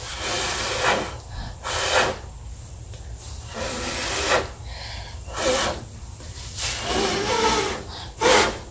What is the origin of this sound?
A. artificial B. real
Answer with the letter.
B